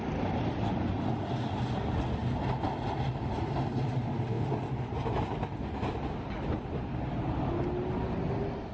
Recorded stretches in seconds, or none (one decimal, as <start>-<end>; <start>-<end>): 0.0-8.7